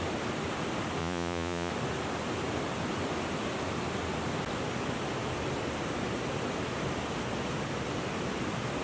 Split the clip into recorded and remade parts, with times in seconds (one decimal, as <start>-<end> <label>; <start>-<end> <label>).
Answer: 0.0-1.0 recorded; 1.0-1.7 remade; 1.7-8.8 recorded